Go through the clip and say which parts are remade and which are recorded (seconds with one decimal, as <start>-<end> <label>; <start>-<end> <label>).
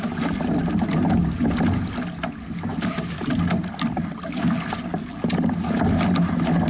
0.0-6.7 recorded